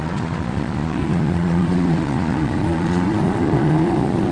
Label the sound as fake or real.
fake